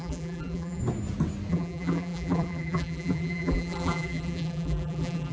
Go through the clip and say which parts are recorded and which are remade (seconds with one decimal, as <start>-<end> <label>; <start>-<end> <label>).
0.0-0.8 remade; 0.8-1.5 recorded; 1.5-5.3 remade

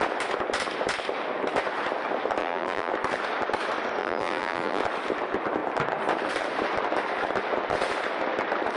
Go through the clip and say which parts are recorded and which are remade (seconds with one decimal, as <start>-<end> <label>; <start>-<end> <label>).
0.0-2.4 recorded; 2.4-2.9 remade; 2.9-4.0 recorded; 4.0-4.8 remade; 4.8-8.8 recorded

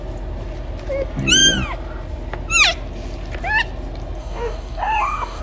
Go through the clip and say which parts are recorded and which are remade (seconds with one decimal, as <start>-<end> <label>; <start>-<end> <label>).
0.0-4.2 recorded; 4.2-5.4 remade

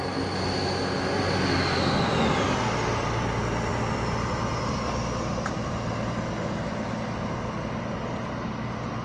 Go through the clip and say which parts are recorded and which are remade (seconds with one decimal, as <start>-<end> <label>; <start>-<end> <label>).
0.0-9.0 recorded

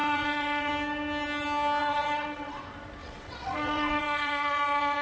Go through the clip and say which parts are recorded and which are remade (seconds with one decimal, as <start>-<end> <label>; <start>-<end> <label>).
0.0-0.7 remade; 0.7-1.8 recorded; 1.8-2.6 remade; 2.6-3.0 recorded; 3.0-5.0 remade

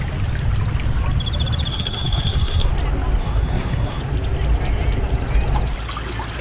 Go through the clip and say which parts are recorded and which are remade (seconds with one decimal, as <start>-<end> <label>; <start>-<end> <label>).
0.0-1.7 recorded; 1.7-2.7 remade; 2.7-3.2 recorded; 3.2-4.0 remade; 4.0-6.4 recorded

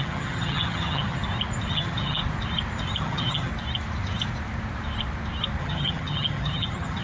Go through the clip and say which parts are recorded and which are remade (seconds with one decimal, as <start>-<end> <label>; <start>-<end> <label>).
0.0-1.2 remade; 1.2-1.7 recorded; 1.7-2.2 remade; 2.2-3.0 recorded; 3.0-3.5 remade; 3.5-5.6 recorded; 5.6-7.0 remade